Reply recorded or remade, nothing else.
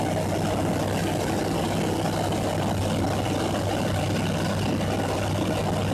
recorded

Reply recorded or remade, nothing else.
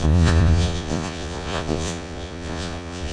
remade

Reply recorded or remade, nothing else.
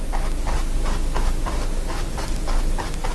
recorded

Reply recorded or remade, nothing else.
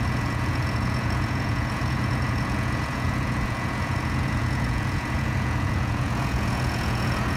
remade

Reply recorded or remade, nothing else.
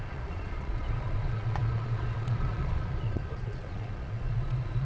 remade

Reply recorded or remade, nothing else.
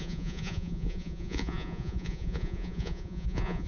remade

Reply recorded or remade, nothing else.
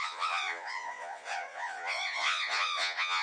remade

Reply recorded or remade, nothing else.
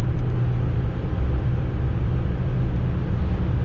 recorded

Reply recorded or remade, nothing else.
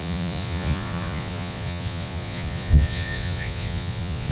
remade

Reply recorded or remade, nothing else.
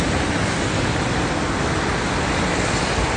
recorded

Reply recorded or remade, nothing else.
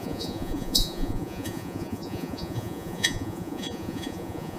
remade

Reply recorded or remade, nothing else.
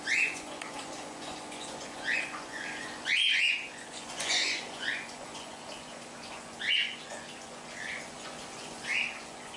remade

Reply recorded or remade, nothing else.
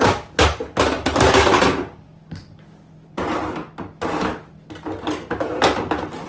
recorded